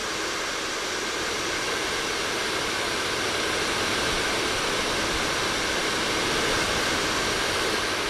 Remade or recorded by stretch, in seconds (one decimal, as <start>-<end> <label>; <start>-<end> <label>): 0.0-8.1 recorded